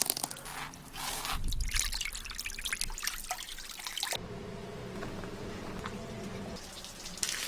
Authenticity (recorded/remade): recorded